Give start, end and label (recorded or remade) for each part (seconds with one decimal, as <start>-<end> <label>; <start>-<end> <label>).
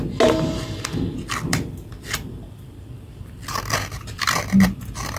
0.0-1.5 recorded; 1.5-4.4 remade; 4.4-5.2 recorded